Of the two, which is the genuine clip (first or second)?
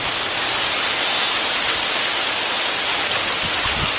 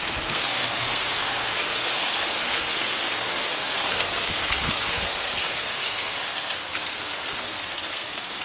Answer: first